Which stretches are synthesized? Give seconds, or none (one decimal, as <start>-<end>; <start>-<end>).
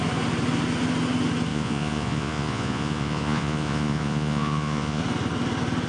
1.5-5.0